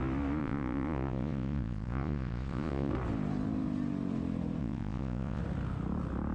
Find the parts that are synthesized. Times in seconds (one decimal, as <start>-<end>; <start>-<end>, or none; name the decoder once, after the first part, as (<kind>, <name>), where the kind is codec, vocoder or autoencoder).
0.4-2.9 (vocoder, Vocos); 4.6-5.4